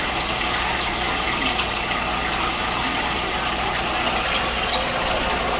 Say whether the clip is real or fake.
real